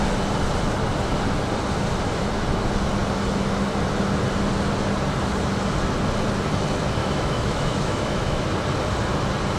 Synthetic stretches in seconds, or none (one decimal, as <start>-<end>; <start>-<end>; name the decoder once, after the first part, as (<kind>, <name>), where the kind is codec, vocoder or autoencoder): 7.0-8.4 (autoencoder, DAC-VAE)